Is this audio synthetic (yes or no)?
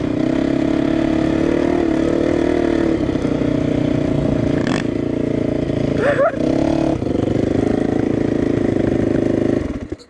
no